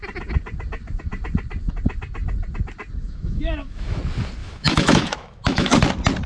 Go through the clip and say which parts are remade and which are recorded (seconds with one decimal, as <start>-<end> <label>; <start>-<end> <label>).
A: 0.0-3.0 recorded; 3.0-4.0 remade; 4.0-4.4 recorded; 4.4-5.8 remade; 5.8-6.3 recorded